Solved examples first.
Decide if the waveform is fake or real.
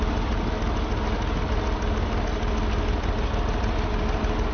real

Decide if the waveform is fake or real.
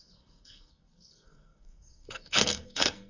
fake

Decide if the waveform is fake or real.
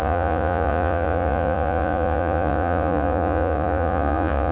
fake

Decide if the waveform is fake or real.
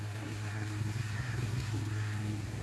fake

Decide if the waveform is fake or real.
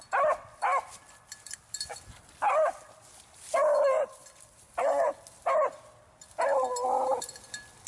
real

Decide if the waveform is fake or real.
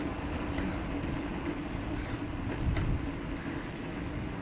real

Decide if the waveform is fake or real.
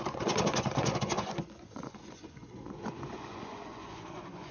fake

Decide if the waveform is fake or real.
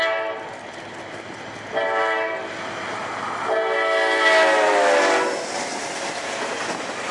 real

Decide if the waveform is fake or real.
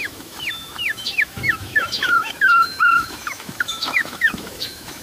fake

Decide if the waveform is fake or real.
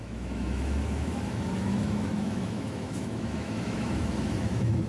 fake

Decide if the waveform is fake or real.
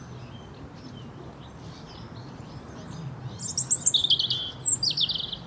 real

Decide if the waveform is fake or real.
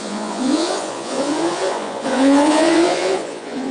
fake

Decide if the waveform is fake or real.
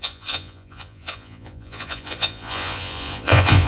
fake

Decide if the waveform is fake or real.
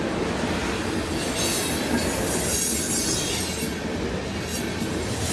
real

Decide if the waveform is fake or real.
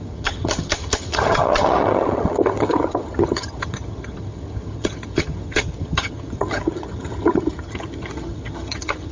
fake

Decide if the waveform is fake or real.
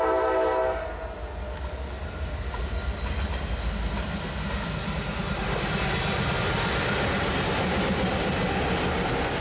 real